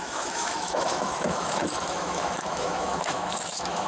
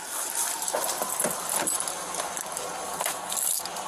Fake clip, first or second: first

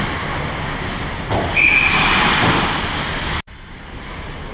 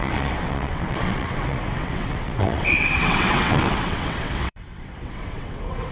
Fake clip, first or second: second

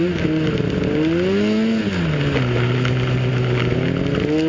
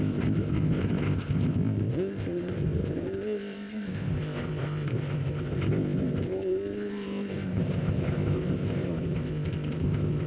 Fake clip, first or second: second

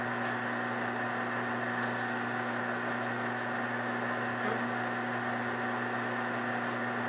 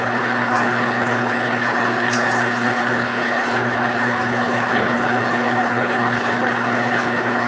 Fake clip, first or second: second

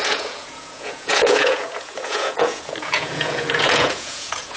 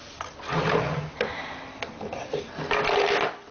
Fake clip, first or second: first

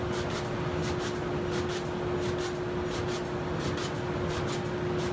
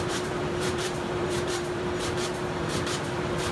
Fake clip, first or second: second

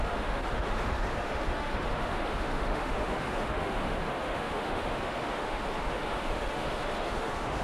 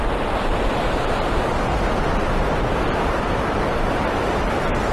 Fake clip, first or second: first